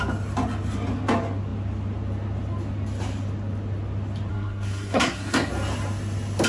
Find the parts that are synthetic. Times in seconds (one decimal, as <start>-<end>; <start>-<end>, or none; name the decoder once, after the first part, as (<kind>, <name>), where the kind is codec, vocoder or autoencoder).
4.3-5.5 (codec, SNAC)